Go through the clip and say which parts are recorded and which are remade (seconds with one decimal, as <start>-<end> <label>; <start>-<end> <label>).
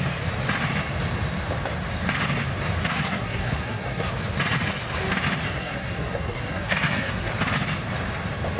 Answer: 0.0-2.8 recorded; 2.8-4.1 remade; 4.1-5.4 recorded; 5.4-7.3 remade; 7.3-8.6 recorded